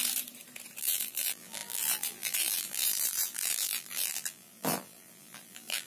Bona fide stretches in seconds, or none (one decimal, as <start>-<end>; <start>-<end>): 0.0-0.8